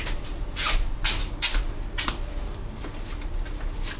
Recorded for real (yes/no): yes